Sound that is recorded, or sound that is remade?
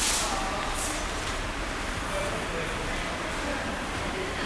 recorded